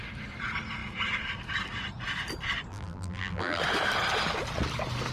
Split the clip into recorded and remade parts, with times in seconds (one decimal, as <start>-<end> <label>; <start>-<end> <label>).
0.0-2.7 recorded; 2.7-3.6 remade; 3.6-5.1 recorded